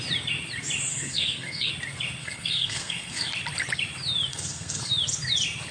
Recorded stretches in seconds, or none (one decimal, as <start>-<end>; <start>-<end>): 0.0-0.9; 1.7-2.2; 3.3-4.3; 4.9-5.7